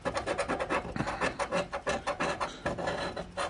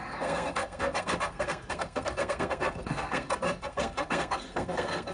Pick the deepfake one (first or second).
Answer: second